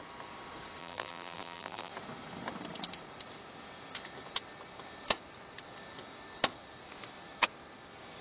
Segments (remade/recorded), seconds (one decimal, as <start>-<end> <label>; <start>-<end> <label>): 0.0-0.8 recorded; 0.8-1.9 remade; 1.9-8.2 recorded